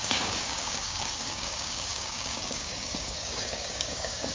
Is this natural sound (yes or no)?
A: no